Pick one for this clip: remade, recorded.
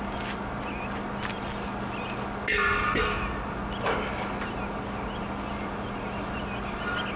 recorded